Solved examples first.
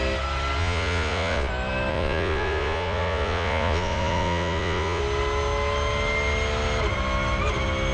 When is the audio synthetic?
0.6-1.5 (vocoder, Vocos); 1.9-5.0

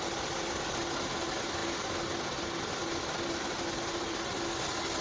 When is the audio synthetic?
none

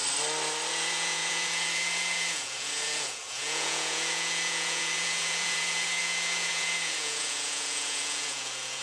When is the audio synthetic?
0.7-8.8 (vocoder, Vocos)